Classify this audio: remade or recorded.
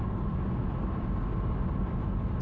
recorded